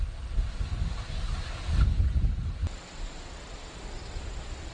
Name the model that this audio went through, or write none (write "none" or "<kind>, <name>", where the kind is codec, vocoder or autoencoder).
none